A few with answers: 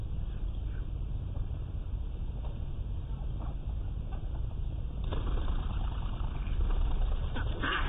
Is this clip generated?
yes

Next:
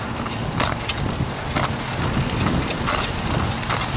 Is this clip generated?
no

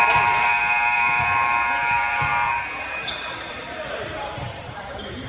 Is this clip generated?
yes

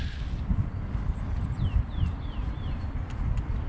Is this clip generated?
no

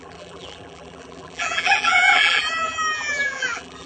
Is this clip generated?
yes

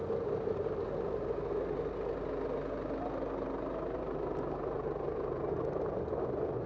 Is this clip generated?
no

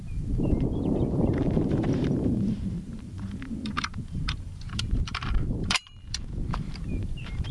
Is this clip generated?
yes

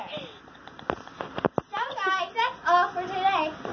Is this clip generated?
no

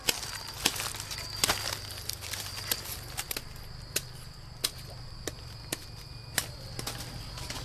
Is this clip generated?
no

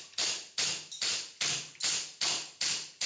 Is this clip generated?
no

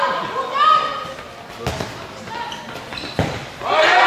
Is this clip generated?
no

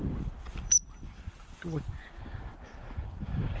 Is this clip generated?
yes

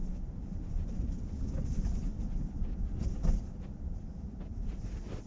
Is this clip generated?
yes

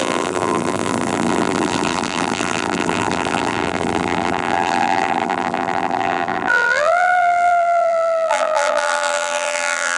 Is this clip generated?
yes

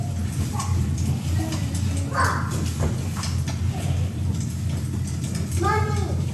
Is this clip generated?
no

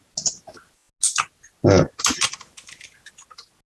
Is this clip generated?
no